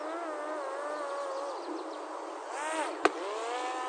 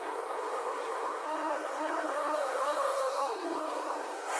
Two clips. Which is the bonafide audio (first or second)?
first